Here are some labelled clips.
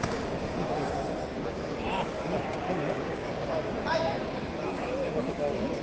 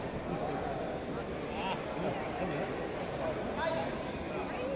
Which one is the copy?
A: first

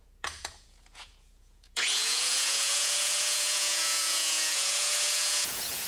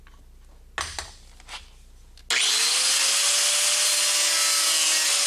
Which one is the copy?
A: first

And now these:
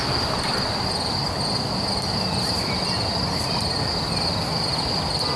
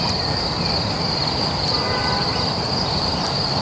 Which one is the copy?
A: second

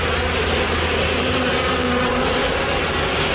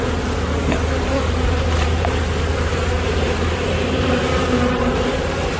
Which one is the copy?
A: second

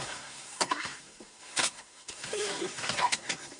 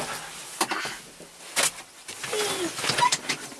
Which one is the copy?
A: first